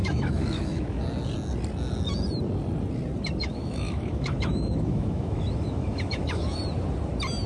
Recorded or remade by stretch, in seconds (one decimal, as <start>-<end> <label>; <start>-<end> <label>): 0.0-1.0 remade; 1.0-3.4 recorded; 3.4-6.6 remade; 6.6-7.5 recorded